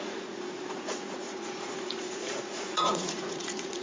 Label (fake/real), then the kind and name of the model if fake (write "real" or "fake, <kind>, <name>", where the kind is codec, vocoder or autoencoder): fake, vocoder, Vocos